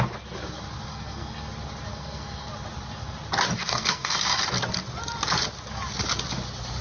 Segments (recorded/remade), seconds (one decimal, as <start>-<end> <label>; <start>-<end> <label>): 0.0-0.9 recorded; 0.9-1.5 remade; 1.5-1.9 recorded; 1.9-2.5 remade; 2.5-3.6 recorded; 3.6-4.2 remade; 4.2-6.8 recorded